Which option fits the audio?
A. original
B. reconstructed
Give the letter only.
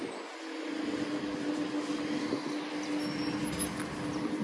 A